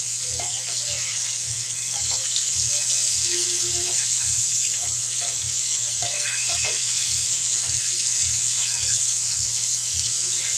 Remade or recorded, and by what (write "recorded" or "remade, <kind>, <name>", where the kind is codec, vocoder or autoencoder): remade, codec, SNAC